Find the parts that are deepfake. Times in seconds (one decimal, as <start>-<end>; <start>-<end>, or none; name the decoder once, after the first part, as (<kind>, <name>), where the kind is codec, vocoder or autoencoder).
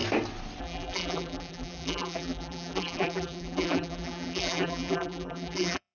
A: 0.6-5.9 (vocoder, BigVGAN v2)